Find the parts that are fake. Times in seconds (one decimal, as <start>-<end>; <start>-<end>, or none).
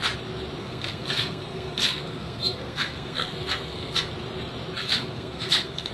0.6-4.1; 4.8-5.9